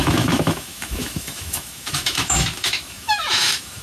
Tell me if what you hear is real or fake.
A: fake